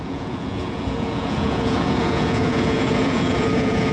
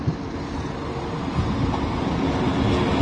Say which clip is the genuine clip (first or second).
second